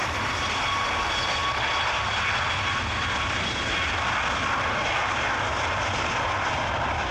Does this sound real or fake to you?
fake